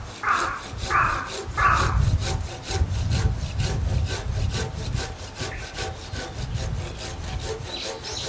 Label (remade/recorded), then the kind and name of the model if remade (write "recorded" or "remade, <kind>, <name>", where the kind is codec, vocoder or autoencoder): recorded